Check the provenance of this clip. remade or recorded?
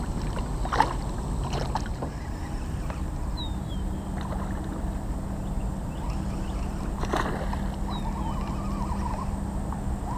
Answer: recorded